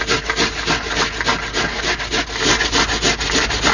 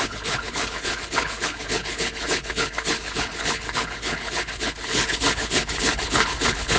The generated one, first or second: second